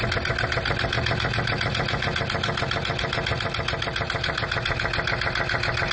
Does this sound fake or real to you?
real